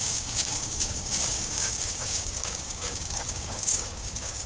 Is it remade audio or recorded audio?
remade